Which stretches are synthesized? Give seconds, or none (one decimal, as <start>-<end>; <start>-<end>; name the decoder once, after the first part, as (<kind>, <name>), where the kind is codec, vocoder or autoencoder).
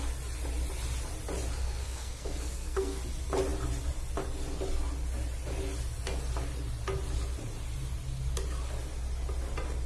1.6-3.0 (codec, SNAC)